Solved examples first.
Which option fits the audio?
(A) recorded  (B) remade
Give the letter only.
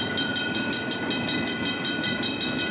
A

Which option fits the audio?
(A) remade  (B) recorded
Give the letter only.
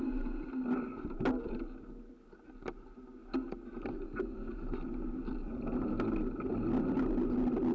B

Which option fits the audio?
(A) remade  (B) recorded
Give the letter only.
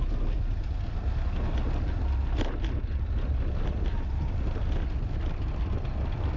B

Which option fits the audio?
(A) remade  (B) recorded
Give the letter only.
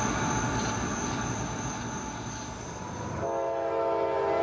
B